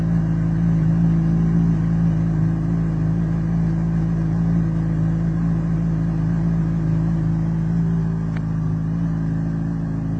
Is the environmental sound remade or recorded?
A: recorded